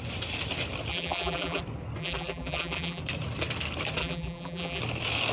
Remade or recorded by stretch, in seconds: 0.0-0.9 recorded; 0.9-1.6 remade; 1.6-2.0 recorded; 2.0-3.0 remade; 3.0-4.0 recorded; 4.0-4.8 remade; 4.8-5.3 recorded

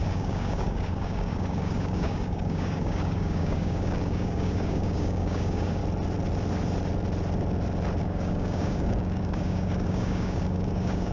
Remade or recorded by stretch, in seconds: 0.0-5.8 remade; 5.8-8.0 recorded; 8.0-11.1 remade

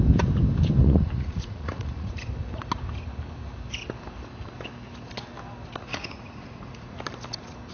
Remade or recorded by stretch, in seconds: 0.0-0.8 recorded; 0.8-2.1 remade; 2.1-5.9 recorded; 5.9-7.0 remade; 7.0-7.7 recorded

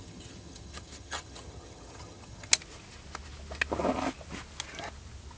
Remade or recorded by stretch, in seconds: 0.0-2.5 remade; 2.5-5.4 recorded

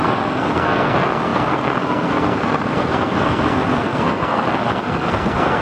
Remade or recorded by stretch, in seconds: 0.0-5.6 remade

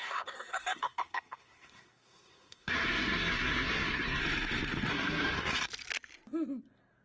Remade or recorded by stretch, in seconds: 0.0-4.2 remade; 4.2-4.9 recorded; 4.9-5.7 remade; 5.7-7.0 recorded